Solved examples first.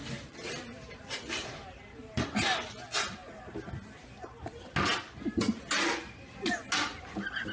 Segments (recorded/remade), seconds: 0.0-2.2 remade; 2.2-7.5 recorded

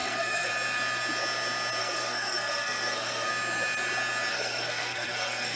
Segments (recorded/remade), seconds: 0.0-0.5 remade; 0.5-1.8 recorded; 1.8-3.3 remade; 3.3-4.3 recorded; 4.3-5.6 remade

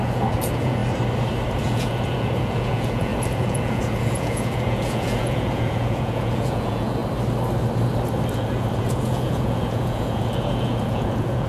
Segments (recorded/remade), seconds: 0.0-0.8 remade; 0.8-1.6 recorded; 1.6-7.0 remade; 7.0-8.3 recorded; 8.3-11.5 remade